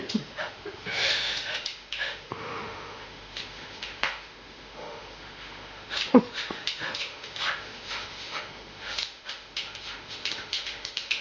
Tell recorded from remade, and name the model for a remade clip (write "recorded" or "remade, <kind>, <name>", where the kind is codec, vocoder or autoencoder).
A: remade, autoencoder, DAC-VAE